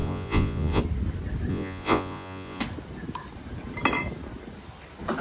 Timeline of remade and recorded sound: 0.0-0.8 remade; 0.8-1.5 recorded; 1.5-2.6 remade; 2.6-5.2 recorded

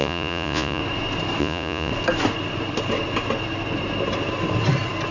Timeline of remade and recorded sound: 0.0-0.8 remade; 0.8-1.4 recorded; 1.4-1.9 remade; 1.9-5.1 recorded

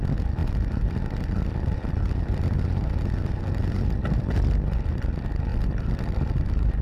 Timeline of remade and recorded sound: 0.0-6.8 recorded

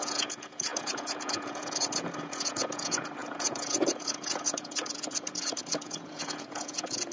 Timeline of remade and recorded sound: 0.0-7.1 remade

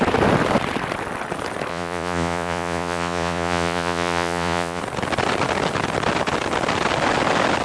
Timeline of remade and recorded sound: 0.0-1.7 recorded; 1.7-4.8 remade; 4.8-7.6 recorded

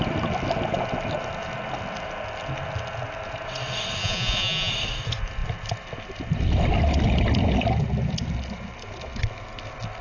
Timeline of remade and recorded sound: 0.0-4.0 recorded; 4.0-4.7 remade; 4.7-10.0 recorded

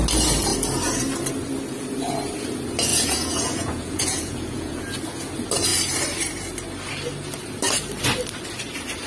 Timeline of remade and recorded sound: 0.0-2.9 recorded; 2.9-4.8 remade; 4.8-9.1 recorded

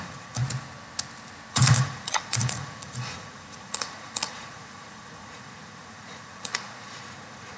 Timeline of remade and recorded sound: 0.0-0.4 remade; 0.4-1.5 recorded; 1.5-7.6 remade